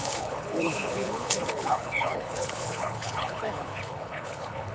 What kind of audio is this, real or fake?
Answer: fake